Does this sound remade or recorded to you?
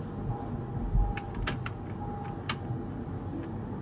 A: recorded